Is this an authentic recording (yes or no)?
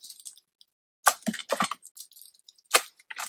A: yes